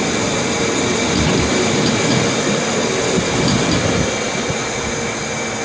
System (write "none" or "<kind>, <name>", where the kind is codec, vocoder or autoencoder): none